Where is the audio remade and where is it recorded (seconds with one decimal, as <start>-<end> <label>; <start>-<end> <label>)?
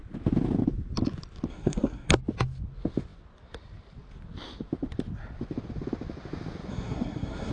0.0-1.5 recorded; 1.5-2.1 remade; 2.1-6.7 recorded; 6.7-7.5 remade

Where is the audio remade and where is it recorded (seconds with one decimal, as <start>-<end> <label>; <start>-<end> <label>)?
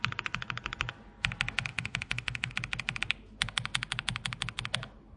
0.0-1.7 recorded; 1.7-2.5 remade; 2.5-5.2 recorded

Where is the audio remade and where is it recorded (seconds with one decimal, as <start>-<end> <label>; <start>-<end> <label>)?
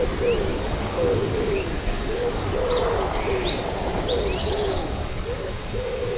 0.0-0.5 recorded; 0.5-2.5 remade; 2.5-4.4 recorded; 4.4-6.2 remade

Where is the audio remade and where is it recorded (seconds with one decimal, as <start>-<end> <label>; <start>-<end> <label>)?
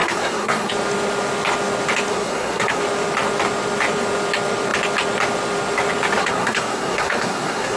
0.0-0.7 remade; 0.7-2.1 recorded; 2.1-2.8 remade; 2.8-6.2 recorded; 6.2-7.8 remade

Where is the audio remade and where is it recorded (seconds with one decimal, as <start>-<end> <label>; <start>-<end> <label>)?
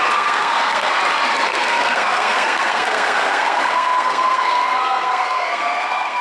0.0-1.0 remade; 1.0-1.5 recorded; 1.5-6.2 remade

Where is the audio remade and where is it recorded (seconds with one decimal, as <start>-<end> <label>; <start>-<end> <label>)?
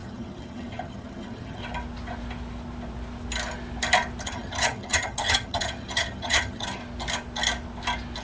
0.0-1.6 remade; 1.6-4.2 recorded; 4.2-6.8 remade; 6.8-8.2 recorded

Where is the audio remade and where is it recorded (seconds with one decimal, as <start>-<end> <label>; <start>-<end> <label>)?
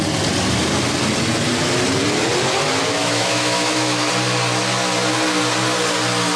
0.0-2.9 recorded; 2.9-4.1 remade; 4.1-6.4 recorded